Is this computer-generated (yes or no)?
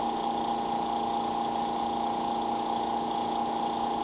no